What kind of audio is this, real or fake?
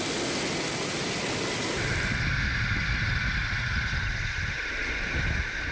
real